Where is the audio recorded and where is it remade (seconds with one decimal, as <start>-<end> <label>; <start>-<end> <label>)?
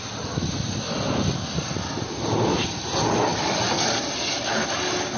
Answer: 0.0-5.2 recorded